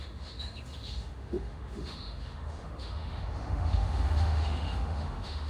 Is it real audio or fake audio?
fake